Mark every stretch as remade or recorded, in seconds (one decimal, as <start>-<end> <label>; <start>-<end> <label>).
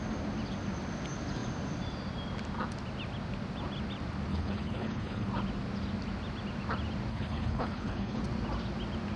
0.0-4.3 recorded; 4.3-5.3 remade; 5.3-7.1 recorded; 7.1-8.2 remade; 8.2-9.2 recorded